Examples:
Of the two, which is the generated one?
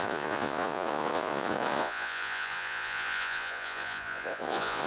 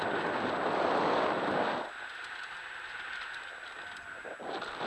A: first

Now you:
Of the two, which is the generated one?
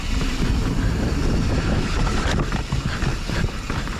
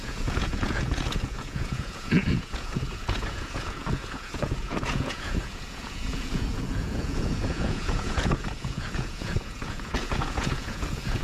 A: second